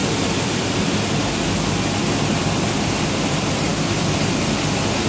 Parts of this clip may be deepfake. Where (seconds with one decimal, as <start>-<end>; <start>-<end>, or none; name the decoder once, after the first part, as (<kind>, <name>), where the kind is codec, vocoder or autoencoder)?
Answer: 2.3-5.1 (vocoder, BigVGAN v2)